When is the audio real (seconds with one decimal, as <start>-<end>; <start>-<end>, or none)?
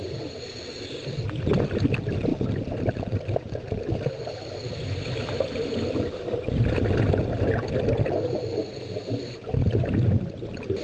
0.0-10.8